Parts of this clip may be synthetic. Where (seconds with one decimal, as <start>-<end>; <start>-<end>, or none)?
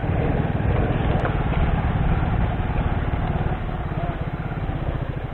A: none